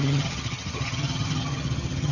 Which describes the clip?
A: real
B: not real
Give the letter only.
B